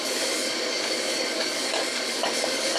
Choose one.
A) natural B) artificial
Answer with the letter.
B